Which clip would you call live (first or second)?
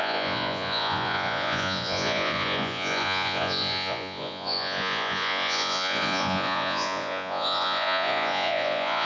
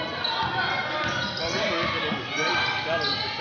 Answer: second